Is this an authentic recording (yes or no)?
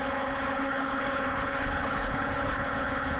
no